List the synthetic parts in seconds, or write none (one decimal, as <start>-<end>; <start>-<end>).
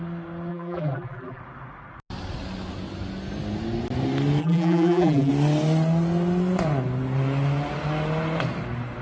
0.5-1.4; 4.4-5.3